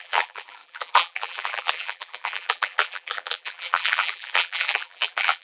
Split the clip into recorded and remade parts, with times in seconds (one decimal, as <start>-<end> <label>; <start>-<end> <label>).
0.0-5.4 remade